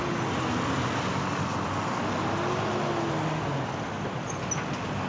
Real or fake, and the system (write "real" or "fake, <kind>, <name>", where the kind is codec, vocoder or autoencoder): real